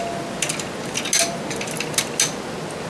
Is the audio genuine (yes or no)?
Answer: yes